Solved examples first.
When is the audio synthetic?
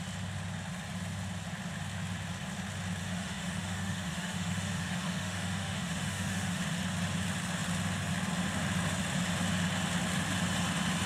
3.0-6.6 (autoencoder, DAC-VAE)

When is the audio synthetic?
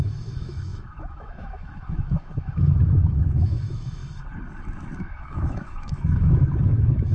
0.0-4.0 (autoencoder, DAC-VAE); 5.0-7.1